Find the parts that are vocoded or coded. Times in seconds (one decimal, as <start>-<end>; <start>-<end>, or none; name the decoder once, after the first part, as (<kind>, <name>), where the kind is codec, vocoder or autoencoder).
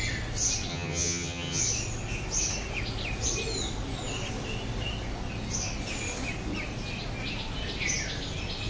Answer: 0.7-1.6 (vocoder, HiFi-GAN)